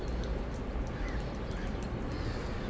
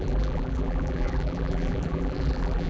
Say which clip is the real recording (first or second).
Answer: first